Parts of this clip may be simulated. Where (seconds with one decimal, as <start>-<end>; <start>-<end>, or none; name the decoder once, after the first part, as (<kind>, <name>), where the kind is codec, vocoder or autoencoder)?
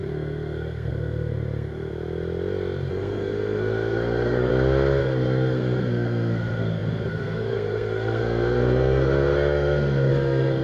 0.0-1.9 (codec, SNAC); 2.9-4.5; 5.0-10.6